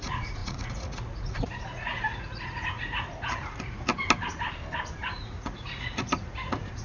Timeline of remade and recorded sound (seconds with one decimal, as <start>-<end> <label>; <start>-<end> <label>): 0.0-3.9 remade; 3.9-5.1 recorded; 5.1-6.8 remade